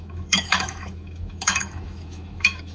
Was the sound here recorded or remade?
remade